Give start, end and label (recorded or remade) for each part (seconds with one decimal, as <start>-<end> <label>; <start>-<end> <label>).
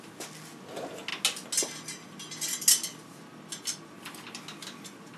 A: 0.0-5.2 recorded